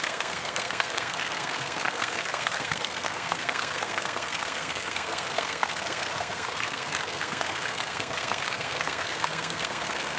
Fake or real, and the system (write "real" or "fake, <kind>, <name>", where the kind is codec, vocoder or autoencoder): fake, codec, SNAC